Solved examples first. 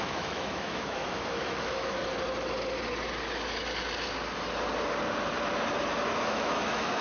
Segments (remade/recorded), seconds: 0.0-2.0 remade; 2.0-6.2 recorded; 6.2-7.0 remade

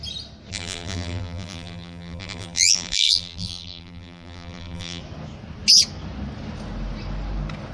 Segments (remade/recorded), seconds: 0.0-0.5 recorded; 0.5-5.0 remade; 5.0-7.7 recorded

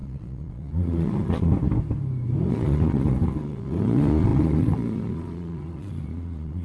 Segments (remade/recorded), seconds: 0.0-1.5 remade; 1.5-2.5 recorded; 2.5-6.6 remade

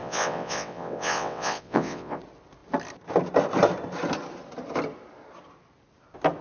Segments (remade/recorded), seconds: 0.0-2.2 remade; 2.2-6.4 recorded

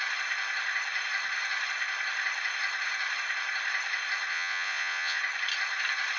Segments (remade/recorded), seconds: 0.0-4.3 recorded; 4.3-5.2 remade; 5.2-6.2 recorded